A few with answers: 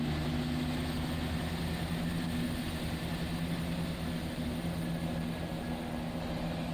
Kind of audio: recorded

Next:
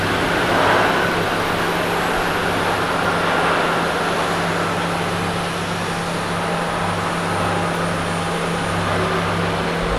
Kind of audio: recorded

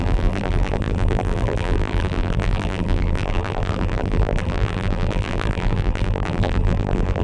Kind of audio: remade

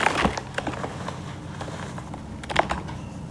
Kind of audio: recorded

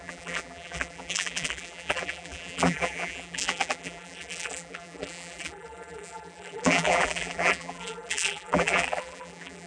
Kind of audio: remade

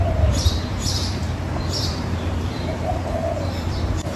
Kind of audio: remade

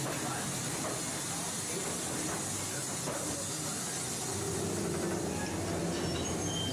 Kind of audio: recorded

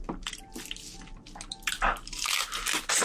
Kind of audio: recorded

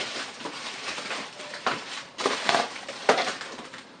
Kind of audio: remade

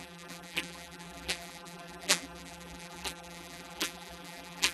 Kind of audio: remade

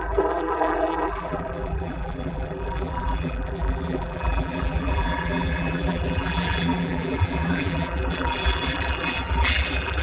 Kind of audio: remade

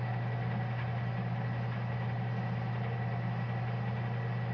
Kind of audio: recorded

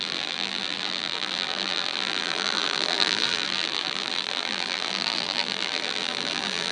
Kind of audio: remade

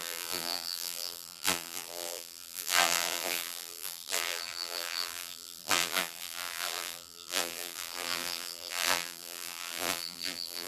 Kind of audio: remade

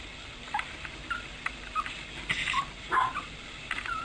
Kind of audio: remade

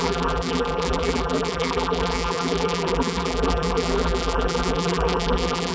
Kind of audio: remade